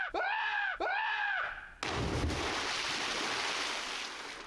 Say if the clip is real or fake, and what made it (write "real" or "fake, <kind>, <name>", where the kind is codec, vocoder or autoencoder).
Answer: real